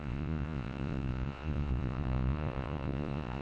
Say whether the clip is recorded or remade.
remade